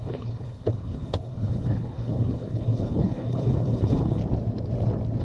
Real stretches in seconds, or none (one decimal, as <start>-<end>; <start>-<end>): 4.2-5.2